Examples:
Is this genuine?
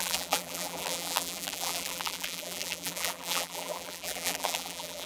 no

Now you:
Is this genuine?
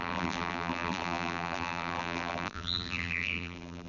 no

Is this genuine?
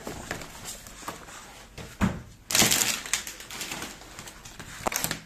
yes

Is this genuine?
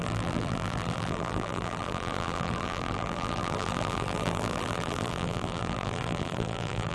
no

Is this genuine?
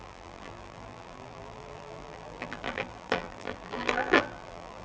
no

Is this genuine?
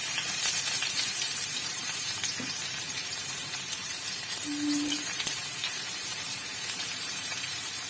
no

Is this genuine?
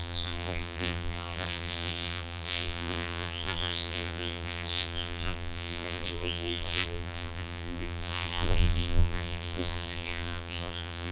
no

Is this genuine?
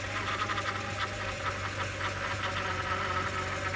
yes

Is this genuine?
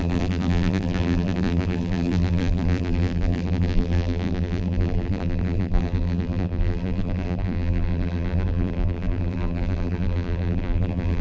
no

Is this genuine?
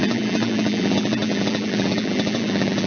no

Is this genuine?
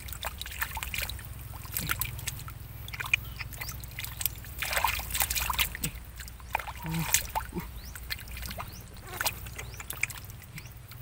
yes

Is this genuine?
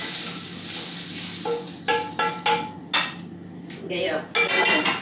yes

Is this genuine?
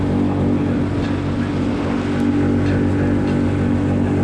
yes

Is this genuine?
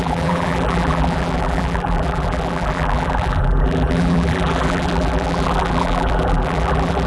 no